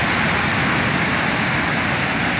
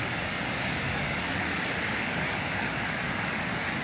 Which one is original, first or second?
first